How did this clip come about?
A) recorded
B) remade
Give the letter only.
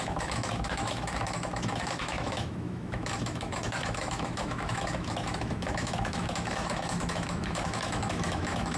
B